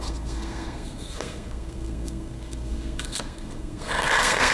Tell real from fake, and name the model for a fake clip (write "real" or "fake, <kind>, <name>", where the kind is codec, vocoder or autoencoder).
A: fake, codec, SNAC